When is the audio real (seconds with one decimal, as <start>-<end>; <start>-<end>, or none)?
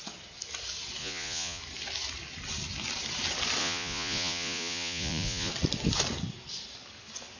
0.0-1.0; 1.6-3.6; 5.5-7.4